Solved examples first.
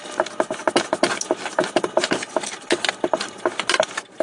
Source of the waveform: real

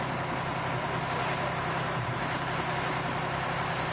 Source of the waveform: fake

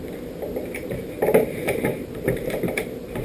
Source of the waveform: fake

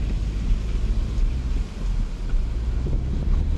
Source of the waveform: real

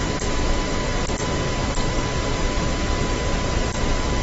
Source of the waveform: real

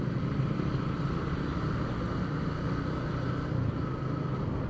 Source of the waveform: real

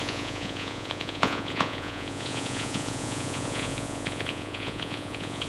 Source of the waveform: fake